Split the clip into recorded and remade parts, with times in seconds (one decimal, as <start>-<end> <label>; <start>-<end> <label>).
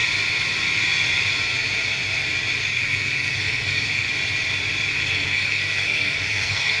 0.0-2.6 recorded; 2.6-4.1 remade; 4.1-4.9 recorded; 4.9-6.8 remade